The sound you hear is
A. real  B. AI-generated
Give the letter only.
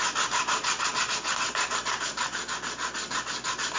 A